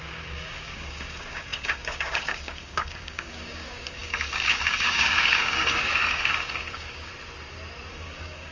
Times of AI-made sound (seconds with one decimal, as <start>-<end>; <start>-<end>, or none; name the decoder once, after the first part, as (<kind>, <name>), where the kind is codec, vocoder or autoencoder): 0.0-7.1 (codec, DAC); 7.9-8.5